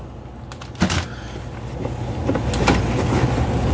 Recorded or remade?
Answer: recorded